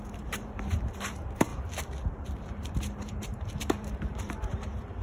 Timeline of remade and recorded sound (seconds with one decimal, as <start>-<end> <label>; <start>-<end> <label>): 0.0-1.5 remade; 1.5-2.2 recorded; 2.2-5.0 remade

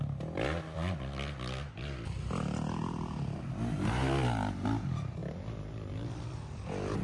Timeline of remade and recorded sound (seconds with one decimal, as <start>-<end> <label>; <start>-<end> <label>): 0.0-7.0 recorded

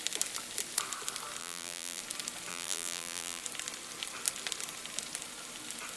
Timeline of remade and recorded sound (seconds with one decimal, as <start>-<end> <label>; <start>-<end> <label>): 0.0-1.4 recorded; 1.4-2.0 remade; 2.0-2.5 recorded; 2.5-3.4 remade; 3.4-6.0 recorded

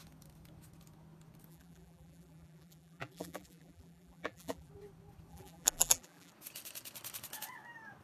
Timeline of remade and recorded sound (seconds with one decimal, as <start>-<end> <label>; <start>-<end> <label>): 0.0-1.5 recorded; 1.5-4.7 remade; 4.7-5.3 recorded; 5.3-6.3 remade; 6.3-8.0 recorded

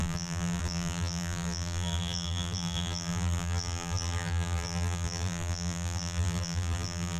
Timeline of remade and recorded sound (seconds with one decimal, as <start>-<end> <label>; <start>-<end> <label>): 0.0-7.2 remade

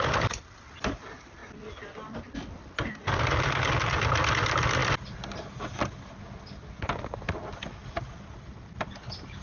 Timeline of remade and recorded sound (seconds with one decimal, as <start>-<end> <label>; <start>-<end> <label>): 0.0-9.4 recorded

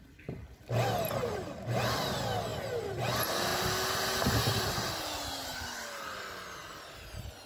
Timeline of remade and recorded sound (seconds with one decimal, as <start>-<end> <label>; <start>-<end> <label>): 0.0-7.5 recorded

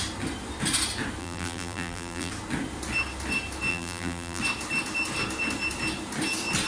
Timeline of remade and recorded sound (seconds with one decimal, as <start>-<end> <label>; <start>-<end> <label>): 0.0-1.2 recorded; 1.2-2.3 remade; 2.3-3.7 recorded; 3.7-4.4 remade; 4.4-6.7 recorded